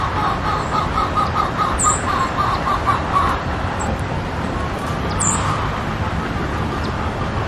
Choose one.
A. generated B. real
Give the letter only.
B